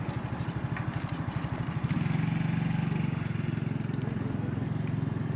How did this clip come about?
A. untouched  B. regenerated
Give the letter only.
A